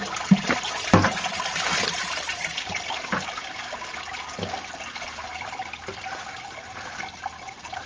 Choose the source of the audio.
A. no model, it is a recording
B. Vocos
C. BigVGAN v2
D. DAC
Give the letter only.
A